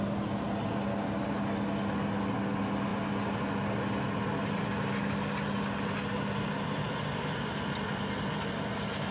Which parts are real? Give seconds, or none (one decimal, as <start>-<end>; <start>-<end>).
0.0-9.1